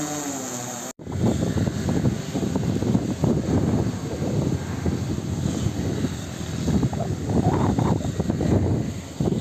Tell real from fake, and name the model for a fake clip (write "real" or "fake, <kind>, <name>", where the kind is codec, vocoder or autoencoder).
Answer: real